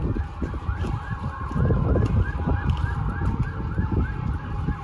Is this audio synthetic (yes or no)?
no